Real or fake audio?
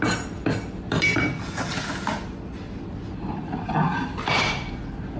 real